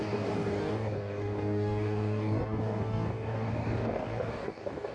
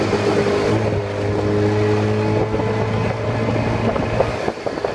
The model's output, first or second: first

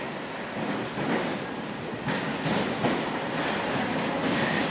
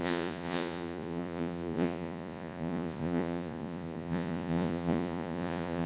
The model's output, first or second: second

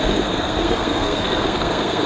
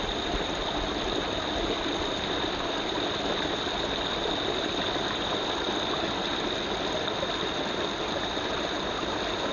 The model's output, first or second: first